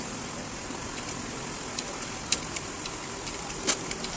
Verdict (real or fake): fake